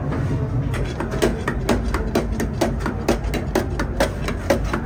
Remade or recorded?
recorded